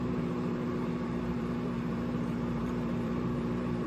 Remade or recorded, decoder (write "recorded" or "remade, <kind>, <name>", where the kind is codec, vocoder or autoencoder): remade, vocoder, BigVGAN v2